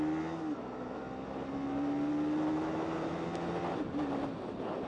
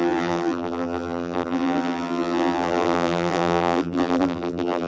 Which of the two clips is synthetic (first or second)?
second